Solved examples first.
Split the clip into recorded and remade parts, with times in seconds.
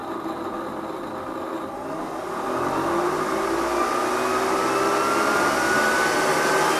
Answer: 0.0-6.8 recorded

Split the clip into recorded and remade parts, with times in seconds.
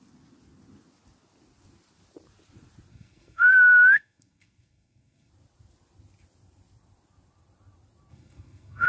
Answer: 0.0-2.9 recorded; 2.9-5.3 remade; 5.3-8.1 recorded; 8.1-8.9 remade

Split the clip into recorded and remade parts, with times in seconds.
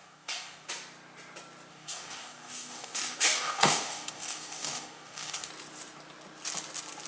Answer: 0.0-0.7 remade; 0.7-1.7 recorded; 1.7-5.5 remade; 5.5-7.1 recorded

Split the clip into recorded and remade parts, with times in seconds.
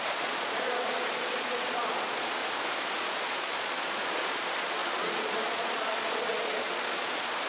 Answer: 0.0-2.4 remade; 2.4-2.9 recorded; 2.9-7.5 remade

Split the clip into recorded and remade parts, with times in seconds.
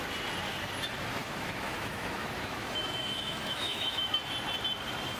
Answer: 0.0-1.2 recorded; 1.2-4.1 remade; 4.1-5.2 recorded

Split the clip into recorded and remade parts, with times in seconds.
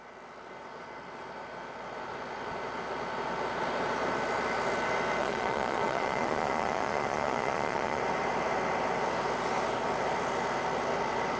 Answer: 0.0-5.2 recorded; 5.2-8.0 remade; 8.0-11.4 recorded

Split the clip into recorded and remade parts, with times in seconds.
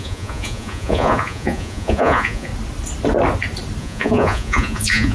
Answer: 0.0-2.5 remade; 2.5-3.8 recorded; 3.8-5.1 remade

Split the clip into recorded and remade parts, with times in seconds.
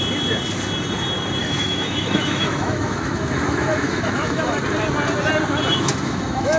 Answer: 0.0-1.4 recorded; 1.4-4.6 remade; 4.6-5.7 recorded; 5.7-6.6 remade